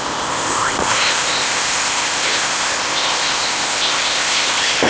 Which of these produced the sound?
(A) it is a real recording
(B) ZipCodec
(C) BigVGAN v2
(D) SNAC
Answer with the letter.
B